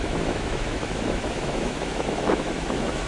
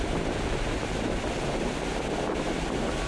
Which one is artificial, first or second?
first